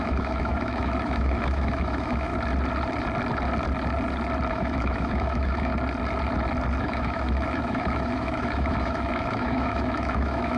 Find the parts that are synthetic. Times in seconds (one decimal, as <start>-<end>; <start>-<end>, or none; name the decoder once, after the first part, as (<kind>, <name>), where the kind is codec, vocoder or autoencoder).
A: 0.0-2.3 (autoencoder, DAC-VAE); 4.5-5.7; 6.8-10.6